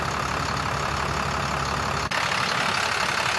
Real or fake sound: real